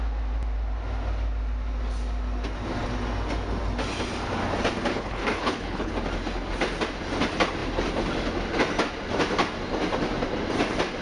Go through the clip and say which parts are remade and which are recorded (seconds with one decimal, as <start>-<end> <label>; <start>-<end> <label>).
0.0-4.9 recorded; 4.9-5.9 remade; 5.9-11.0 recorded